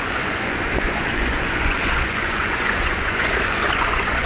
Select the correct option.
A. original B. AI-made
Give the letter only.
B